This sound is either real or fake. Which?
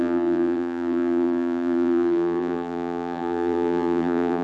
fake